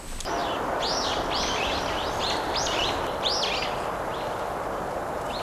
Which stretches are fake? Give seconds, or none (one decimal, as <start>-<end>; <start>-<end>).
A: 0.4-3.6